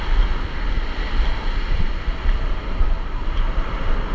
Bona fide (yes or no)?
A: yes